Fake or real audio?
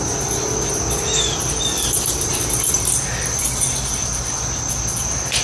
real